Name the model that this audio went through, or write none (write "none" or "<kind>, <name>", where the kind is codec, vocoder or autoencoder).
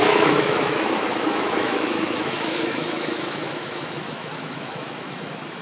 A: autoencoder, DAC-VAE